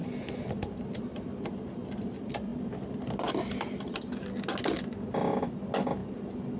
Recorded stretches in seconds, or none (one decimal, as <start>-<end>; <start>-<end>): 0.0-2.5; 3.3-6.6